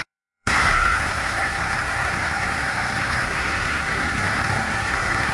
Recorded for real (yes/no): no